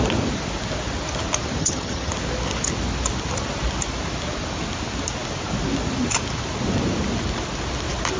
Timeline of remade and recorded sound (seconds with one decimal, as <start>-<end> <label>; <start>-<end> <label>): 0.0-1.6 recorded; 1.6-2.1 remade; 2.1-8.2 recorded